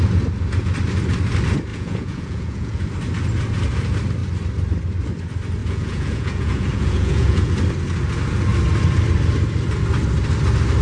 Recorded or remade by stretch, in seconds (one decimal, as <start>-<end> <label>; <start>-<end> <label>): 0.0-1.7 recorded; 1.7-2.8 remade; 2.8-5.6 recorded; 5.6-7.5 remade; 7.5-10.8 recorded